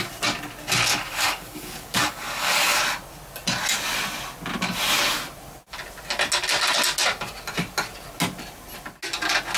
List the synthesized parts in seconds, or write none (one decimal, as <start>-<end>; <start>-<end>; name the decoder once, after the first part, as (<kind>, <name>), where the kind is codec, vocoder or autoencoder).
0.9-2.8 (codec, DAC)